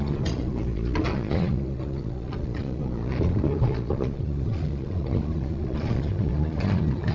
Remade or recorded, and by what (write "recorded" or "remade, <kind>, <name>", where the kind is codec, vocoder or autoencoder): remade, vocoder, Vocos